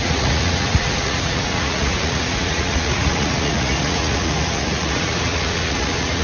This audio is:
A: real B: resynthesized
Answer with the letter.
B